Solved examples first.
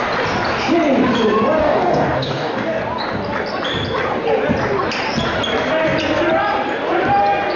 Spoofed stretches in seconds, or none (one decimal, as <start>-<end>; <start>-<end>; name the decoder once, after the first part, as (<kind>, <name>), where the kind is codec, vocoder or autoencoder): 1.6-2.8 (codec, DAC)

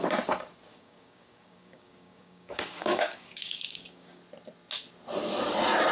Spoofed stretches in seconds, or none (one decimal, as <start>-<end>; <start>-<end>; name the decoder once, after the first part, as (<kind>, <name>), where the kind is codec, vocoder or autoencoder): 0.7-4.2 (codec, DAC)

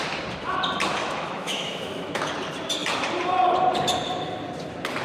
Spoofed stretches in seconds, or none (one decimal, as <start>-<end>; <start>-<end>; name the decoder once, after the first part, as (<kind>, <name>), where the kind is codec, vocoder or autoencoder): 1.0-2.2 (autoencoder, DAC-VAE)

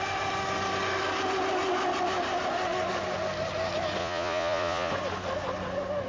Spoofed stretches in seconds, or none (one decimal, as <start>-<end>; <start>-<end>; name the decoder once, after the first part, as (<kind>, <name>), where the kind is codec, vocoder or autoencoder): 4.0-4.9 (vocoder, Vocos)

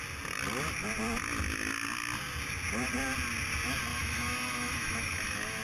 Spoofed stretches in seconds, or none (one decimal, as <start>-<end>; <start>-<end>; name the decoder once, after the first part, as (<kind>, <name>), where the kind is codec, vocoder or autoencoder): 3.9-5.6 (autoencoder, DAC-VAE)